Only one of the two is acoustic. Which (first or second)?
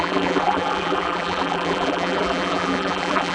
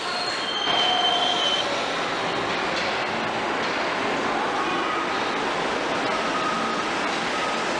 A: second